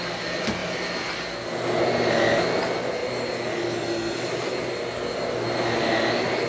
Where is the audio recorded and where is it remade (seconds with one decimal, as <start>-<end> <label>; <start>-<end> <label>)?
0.0-6.5 recorded